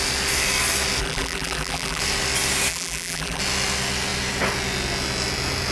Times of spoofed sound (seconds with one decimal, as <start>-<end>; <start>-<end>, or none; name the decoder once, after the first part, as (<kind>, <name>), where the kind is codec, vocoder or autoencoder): 1.0-2.0 (vocoder, BigVGAN v2); 2.7-3.4